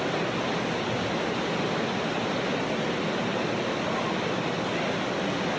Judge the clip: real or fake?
real